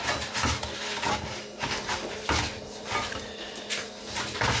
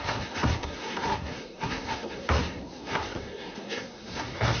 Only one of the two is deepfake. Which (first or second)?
second